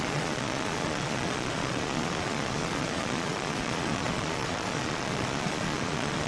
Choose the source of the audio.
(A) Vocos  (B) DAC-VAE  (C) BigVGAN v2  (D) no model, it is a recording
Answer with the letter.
A